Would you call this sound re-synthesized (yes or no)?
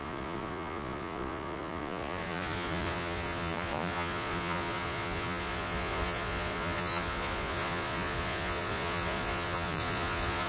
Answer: yes